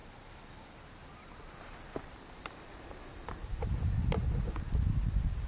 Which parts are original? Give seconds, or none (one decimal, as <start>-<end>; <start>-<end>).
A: 0.0-5.5